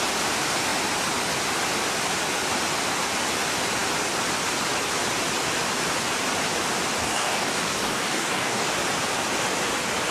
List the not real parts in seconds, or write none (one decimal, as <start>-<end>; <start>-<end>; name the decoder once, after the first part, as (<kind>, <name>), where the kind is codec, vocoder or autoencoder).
7.0-8.7 (codec, DAC)